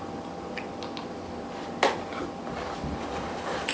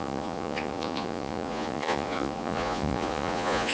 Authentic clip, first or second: first